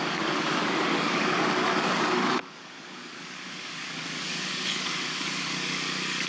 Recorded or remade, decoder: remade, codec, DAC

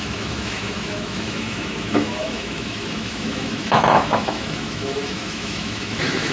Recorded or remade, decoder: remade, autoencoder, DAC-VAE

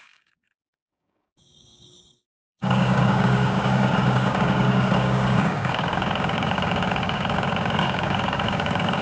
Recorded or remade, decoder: remade, codec, DAC